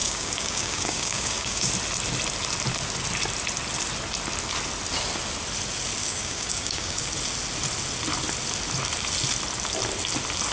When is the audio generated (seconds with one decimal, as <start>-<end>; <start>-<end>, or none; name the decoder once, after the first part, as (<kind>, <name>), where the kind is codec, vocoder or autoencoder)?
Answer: 0.0-1.7 (codec, DAC); 6.0-7.1